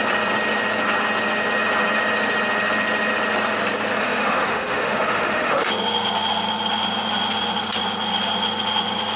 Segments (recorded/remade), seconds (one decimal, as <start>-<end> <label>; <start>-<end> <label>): 0.0-4.0 recorded; 4.0-5.7 remade; 5.7-9.2 recorded